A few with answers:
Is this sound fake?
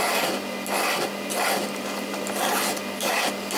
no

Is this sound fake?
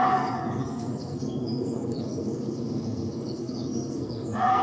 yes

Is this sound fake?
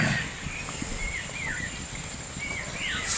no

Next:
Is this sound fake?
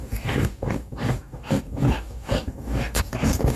yes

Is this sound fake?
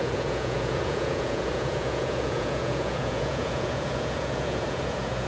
yes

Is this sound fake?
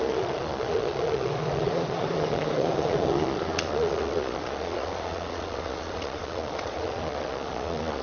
yes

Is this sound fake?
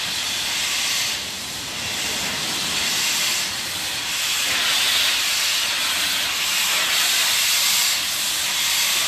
no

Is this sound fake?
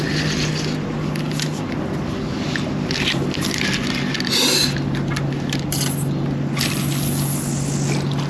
no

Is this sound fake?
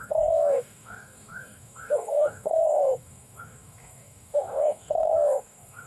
yes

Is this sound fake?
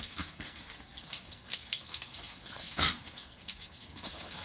yes